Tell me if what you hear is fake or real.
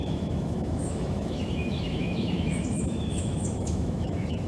fake